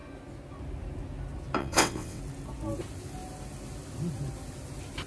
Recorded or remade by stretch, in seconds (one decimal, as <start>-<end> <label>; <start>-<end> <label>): 0.0-1.6 recorded; 1.6-2.2 remade; 2.2-5.1 recorded